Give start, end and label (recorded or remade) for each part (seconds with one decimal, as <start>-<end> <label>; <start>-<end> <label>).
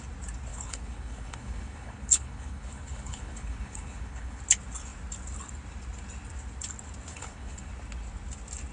0.0-0.5 recorded; 0.5-4.4 remade; 4.4-7.1 recorded; 7.1-7.7 remade; 7.7-8.7 recorded